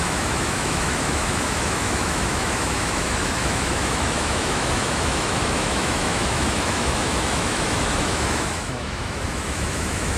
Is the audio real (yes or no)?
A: no